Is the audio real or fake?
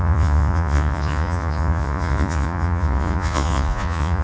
fake